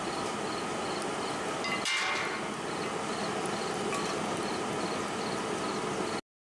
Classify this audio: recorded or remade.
recorded